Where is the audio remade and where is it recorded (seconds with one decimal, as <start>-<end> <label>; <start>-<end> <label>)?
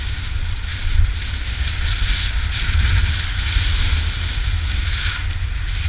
0.0-5.9 recorded